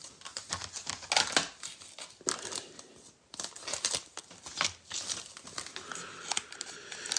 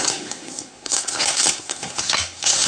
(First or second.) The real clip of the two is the first